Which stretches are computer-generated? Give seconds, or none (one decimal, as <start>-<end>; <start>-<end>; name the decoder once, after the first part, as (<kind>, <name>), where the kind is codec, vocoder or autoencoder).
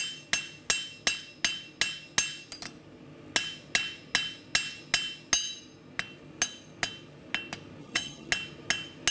7.8-8.3 (vocoder, HiFi-GAN)